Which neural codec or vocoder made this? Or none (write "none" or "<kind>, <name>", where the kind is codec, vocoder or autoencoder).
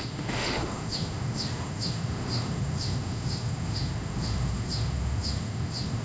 autoencoder, DAC-VAE